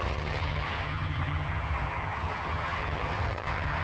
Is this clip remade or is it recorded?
remade